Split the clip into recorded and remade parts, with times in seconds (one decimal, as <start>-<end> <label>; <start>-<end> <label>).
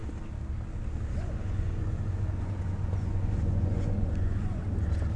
0.0-1.1 recorded; 1.1-4.6 remade; 4.6-5.2 recorded